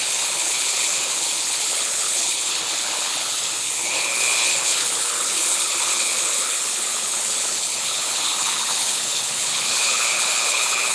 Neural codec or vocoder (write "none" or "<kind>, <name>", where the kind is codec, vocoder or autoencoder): codec, HILCodec